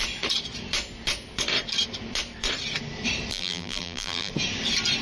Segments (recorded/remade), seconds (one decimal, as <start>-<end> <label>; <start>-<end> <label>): 0.0-3.3 recorded; 3.3-4.3 remade; 4.3-5.0 recorded

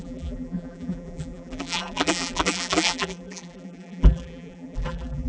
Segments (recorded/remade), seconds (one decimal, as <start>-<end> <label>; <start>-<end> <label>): 0.0-5.3 remade